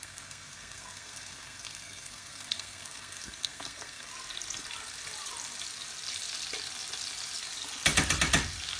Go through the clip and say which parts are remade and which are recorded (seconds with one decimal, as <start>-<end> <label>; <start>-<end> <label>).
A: 0.0-4.1 remade; 4.1-8.8 recorded